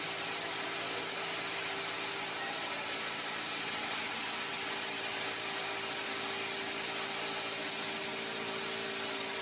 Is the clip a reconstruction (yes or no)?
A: no